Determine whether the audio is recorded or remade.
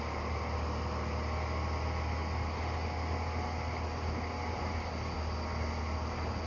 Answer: recorded